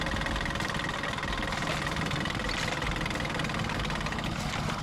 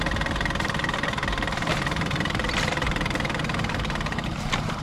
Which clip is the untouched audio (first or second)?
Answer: first